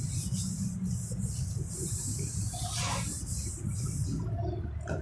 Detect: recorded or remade recorded